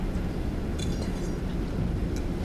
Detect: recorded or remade recorded